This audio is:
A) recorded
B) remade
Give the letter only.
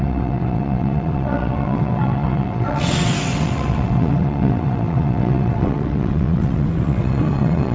B